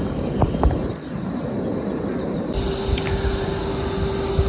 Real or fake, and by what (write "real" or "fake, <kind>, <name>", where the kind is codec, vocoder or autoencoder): real